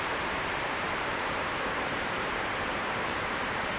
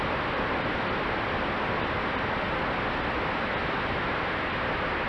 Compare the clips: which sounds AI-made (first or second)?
first